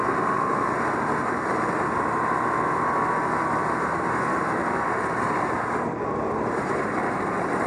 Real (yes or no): no